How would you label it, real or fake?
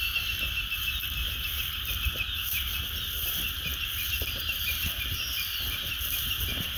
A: real